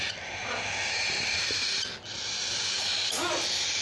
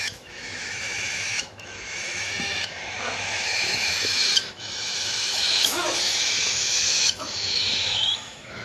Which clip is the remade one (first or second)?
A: second